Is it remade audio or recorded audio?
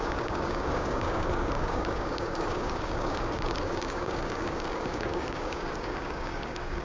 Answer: remade